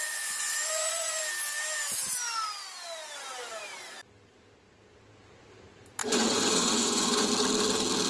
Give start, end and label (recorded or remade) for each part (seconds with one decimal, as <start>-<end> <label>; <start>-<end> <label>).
0.0-1.2 remade; 1.2-6.0 recorded; 6.0-7.3 remade; 7.3-8.1 recorded